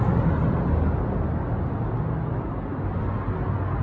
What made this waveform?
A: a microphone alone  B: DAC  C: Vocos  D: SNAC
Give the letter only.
A